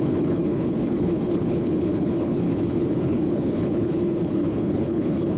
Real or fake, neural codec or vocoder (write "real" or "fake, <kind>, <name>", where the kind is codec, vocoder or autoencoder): fake, codec, HILCodec